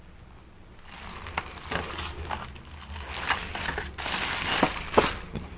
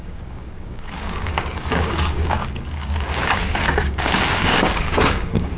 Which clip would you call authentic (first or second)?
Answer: first